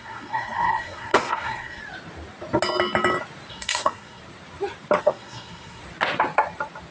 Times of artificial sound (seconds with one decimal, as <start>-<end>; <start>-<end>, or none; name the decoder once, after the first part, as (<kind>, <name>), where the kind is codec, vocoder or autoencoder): 0.0-1.8 (codec, SNAC); 3.5-4.2; 5.0-5.8